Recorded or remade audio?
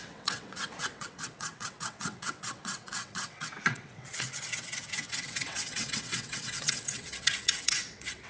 remade